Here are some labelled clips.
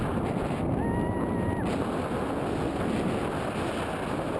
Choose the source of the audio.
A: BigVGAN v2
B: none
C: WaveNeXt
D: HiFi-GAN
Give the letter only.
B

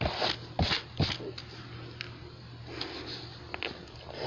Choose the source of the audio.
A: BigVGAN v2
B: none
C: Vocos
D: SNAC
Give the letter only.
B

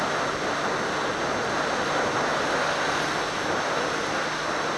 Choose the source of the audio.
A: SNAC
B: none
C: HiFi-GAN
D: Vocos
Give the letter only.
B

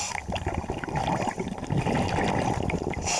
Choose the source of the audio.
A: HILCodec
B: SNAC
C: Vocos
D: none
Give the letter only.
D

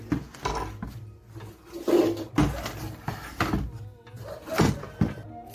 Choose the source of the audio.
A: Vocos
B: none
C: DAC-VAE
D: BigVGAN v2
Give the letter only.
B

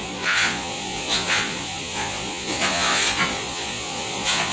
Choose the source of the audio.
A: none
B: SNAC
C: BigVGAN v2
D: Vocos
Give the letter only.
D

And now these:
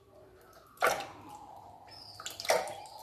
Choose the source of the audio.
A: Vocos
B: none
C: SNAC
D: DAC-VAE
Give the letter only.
B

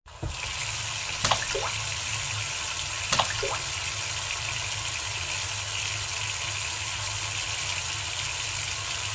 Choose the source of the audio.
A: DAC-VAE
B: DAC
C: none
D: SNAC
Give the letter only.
C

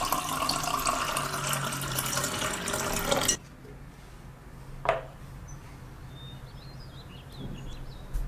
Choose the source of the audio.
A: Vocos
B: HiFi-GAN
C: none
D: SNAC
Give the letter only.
C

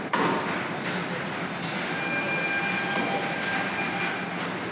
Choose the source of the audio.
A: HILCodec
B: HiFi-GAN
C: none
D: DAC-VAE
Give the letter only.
C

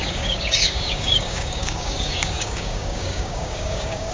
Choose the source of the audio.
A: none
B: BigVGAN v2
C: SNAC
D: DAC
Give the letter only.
D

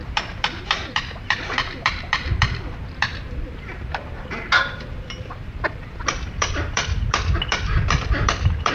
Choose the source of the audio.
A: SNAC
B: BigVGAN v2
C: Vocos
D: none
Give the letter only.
B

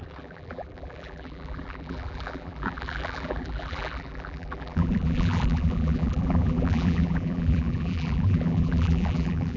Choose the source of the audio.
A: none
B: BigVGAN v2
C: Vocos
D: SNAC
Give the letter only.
B